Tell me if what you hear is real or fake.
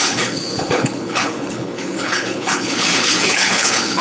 fake